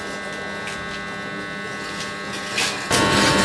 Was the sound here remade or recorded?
recorded